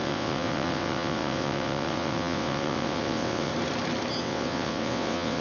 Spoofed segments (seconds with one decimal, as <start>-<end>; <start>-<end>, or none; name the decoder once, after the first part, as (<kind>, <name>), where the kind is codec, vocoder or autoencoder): 0.0-3.5 (vocoder, WaveNeXt); 4.2-5.4